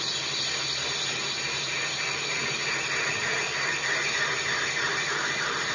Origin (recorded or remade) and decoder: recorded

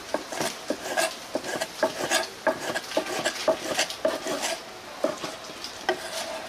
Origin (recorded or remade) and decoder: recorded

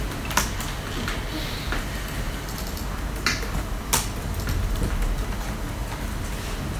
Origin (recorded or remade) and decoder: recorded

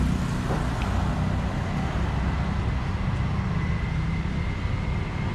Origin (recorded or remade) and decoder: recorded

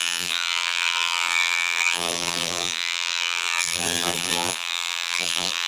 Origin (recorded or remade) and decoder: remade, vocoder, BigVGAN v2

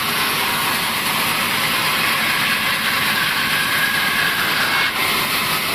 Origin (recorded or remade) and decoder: recorded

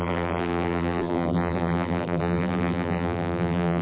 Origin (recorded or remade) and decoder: remade, vocoder, BigVGAN v2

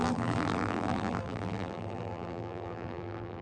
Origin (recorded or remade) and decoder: remade, vocoder, BigVGAN v2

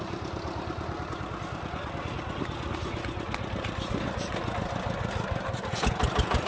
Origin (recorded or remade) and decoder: recorded